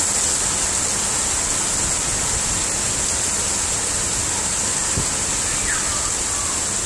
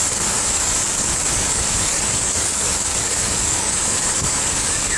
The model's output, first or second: second